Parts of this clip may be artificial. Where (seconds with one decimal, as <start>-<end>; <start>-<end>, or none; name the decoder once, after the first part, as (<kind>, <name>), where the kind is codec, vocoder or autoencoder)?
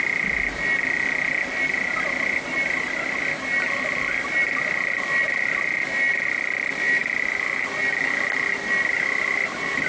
none